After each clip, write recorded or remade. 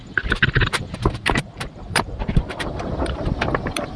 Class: remade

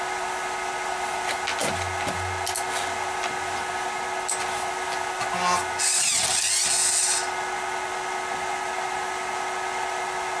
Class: recorded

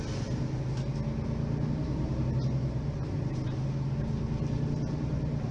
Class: recorded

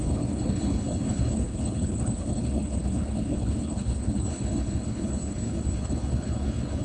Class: remade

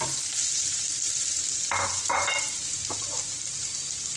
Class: remade